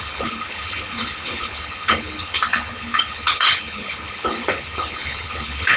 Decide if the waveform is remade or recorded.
remade